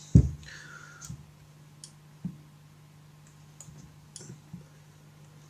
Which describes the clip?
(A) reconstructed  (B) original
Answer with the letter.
B